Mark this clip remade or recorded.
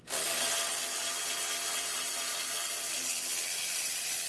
recorded